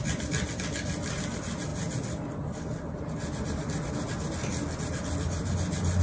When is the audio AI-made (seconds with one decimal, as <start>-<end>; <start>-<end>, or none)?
none

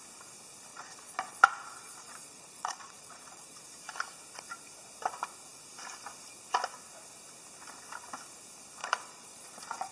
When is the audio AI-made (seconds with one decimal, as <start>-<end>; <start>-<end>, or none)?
0.7-3.6; 8.8-9.9

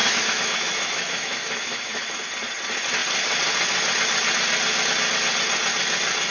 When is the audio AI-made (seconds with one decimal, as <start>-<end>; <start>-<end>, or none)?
0.0-2.2

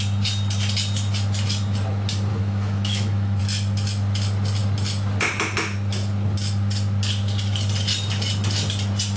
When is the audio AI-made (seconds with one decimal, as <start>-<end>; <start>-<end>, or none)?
2.3-3.4